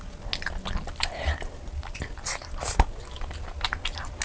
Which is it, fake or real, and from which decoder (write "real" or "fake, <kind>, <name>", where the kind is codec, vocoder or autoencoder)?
real